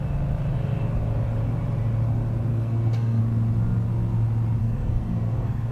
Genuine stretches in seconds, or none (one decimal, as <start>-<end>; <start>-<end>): 0.0-2.5; 3.2-4.6

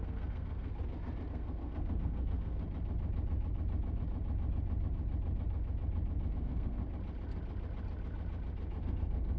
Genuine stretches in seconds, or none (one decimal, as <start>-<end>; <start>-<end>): 0.7-1.3; 2.6-6.3; 6.8-8.8